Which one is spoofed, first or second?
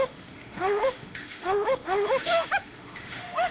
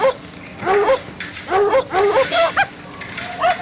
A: first